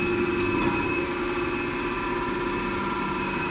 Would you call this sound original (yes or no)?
yes